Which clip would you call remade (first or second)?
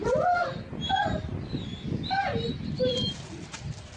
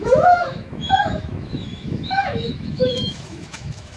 second